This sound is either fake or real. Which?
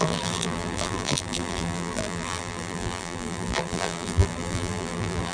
fake